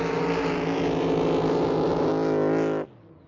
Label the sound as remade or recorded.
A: recorded